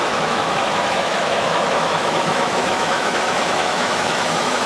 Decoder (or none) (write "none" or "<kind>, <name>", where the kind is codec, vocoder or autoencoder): autoencoder, DAC-VAE